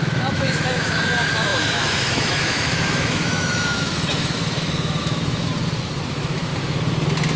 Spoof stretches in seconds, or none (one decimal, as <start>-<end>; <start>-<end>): 0.0-5.5; 6.1-6.5